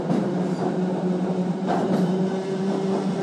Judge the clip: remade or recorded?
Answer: remade